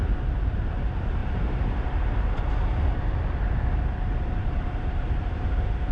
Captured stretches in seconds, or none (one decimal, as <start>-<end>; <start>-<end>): 0.0-4.4